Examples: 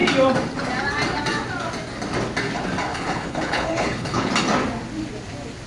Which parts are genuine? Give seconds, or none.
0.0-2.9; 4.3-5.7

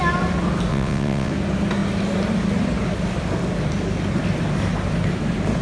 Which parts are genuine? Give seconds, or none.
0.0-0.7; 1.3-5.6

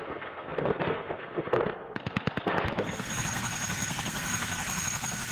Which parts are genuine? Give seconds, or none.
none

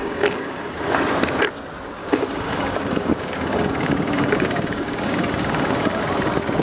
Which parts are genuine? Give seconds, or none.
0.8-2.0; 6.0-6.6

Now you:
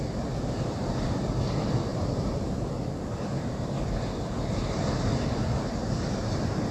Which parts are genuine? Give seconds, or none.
0.0-1.9; 2.9-6.7

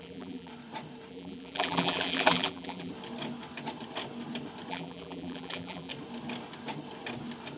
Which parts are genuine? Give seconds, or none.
0.5-1.1; 2.9-4.7; 5.9-7.6

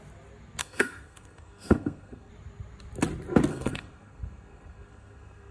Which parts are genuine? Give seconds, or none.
0.0-0.6; 2.3-3.5

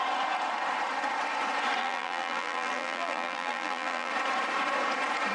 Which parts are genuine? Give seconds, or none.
0.0-1.8; 4.1-5.3